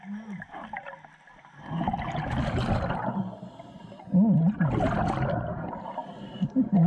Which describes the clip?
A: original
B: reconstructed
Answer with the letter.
A